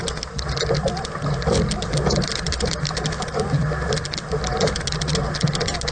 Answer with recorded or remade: recorded